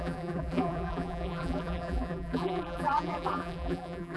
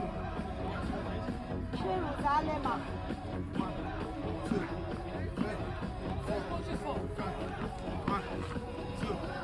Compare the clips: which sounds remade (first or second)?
first